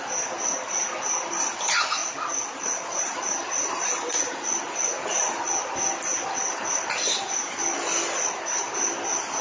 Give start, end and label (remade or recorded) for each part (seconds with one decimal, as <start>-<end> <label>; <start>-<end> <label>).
0.0-9.4 recorded